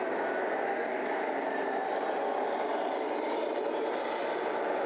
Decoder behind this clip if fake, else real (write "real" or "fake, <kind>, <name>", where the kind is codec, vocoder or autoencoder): real